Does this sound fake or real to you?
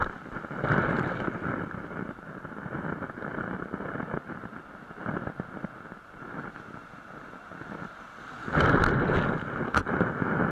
real